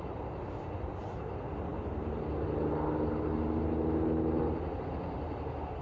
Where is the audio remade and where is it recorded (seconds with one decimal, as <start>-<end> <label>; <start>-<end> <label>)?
0.0-5.8 recorded